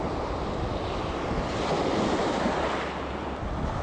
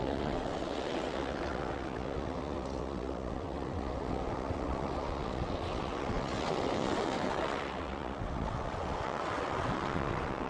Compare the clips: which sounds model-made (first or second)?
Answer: second